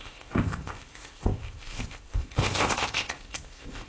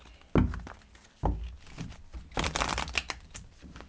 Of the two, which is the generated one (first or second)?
first